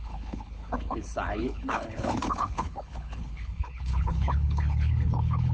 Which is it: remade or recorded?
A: remade